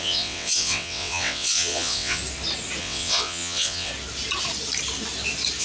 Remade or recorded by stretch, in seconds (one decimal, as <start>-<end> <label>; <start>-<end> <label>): 0.0-2.2 remade; 2.2-2.8 recorded; 2.8-3.9 remade; 3.9-5.6 recorded